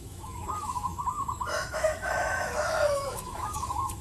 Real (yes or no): no